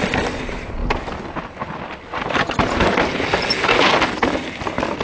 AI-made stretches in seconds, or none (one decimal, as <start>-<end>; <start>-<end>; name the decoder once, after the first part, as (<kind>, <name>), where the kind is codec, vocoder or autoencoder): none